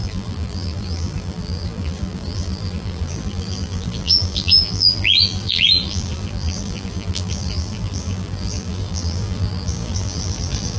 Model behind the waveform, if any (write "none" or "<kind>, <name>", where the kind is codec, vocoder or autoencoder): vocoder, BigVGAN v2